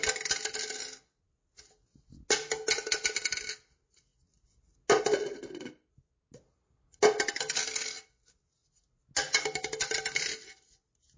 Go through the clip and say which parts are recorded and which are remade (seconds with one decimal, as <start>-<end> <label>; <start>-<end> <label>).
0.0-11.2 recorded